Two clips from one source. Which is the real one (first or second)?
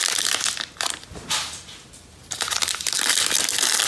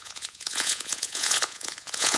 first